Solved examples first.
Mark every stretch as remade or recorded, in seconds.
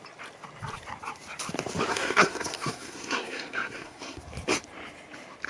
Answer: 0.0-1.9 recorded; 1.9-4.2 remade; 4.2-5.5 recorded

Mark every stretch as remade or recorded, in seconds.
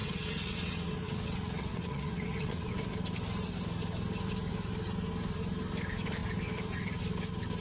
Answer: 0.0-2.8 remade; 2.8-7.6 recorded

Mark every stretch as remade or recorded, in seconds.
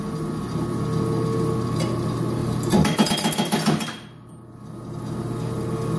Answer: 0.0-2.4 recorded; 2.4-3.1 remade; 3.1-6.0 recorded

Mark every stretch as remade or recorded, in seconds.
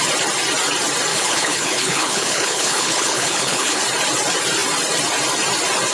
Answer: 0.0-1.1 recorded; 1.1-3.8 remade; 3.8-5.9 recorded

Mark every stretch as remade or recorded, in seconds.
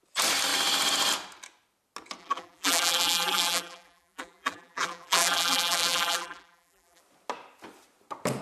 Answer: 0.0-2.2 recorded; 2.2-7.0 remade; 7.0-8.4 recorded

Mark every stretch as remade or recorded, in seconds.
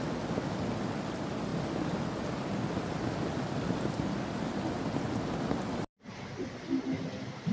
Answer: 0.0-7.5 recorded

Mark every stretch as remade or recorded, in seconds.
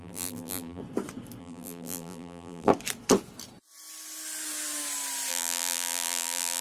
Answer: 0.0-0.8 remade; 0.8-1.4 recorded; 1.4-2.7 remade; 2.7-5.3 recorded; 5.3-6.6 remade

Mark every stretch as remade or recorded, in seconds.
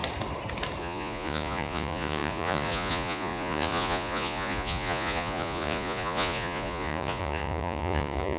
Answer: 0.0-0.8 recorded; 0.8-8.4 remade